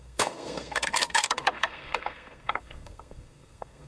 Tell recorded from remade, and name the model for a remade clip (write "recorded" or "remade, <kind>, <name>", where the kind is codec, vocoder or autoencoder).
remade, codec, SNAC